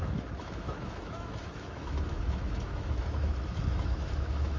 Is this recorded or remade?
remade